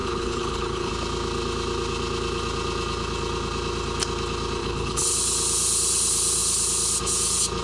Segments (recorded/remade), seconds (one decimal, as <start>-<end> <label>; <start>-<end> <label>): 0.0-0.9 remade; 0.9-4.6 recorded; 4.6-5.1 remade; 5.1-7.6 recorded